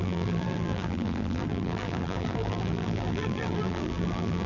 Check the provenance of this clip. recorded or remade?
remade